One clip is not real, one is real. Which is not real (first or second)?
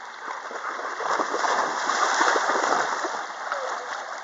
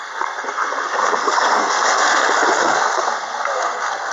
second